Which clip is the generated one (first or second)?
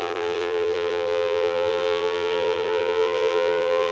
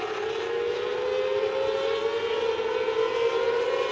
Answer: first